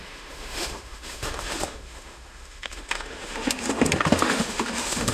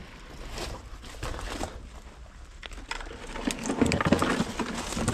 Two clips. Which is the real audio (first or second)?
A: second